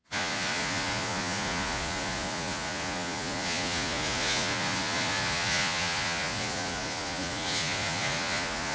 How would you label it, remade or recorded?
remade